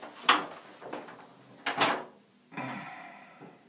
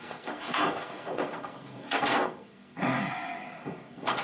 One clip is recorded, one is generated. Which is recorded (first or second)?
first